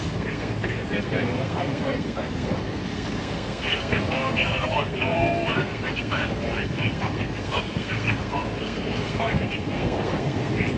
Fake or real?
fake